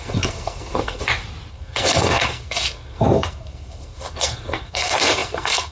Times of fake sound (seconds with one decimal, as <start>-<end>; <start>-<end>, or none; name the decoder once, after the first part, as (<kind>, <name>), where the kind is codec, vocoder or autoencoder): 0.0-1.0 (codec, SNAC); 1.5-5.7